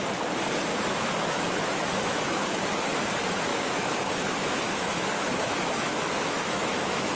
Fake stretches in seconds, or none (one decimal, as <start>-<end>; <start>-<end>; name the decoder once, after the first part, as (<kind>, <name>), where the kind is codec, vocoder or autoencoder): 0.7-3.0 (autoencoder, DAC-VAE); 3.5-7.2